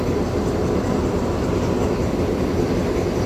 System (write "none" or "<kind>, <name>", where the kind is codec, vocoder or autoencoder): none